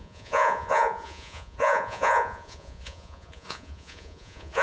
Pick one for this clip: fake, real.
fake